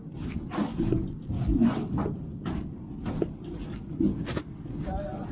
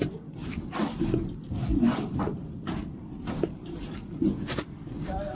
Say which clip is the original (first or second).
first